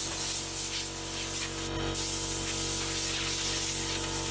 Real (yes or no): yes